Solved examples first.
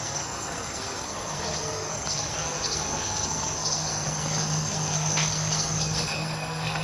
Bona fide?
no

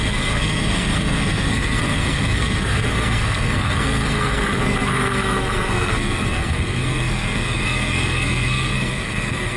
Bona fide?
no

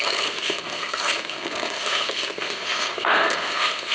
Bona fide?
no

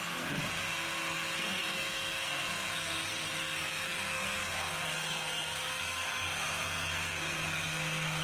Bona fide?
no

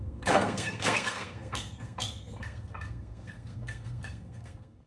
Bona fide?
no